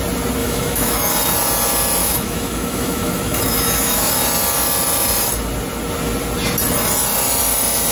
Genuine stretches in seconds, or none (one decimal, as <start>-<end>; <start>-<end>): 0.0-0.4; 1.1-2.0; 4.1-7.9